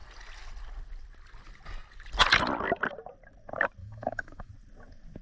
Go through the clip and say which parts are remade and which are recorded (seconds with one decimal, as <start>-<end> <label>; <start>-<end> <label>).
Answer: 0.0-3.8 recorded; 3.8-4.5 remade; 4.5-5.2 recorded

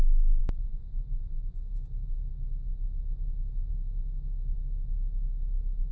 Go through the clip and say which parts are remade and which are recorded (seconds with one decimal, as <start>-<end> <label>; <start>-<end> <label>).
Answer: 0.0-5.9 recorded

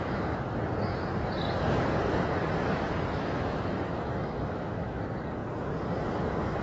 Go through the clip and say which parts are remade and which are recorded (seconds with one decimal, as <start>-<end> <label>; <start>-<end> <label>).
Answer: 0.0-3.1 recorded; 3.1-5.0 remade; 5.0-6.6 recorded